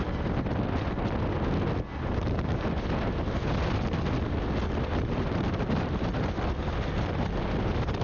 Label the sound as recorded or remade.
recorded